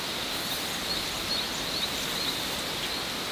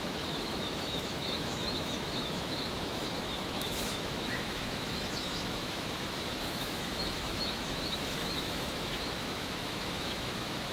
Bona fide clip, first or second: first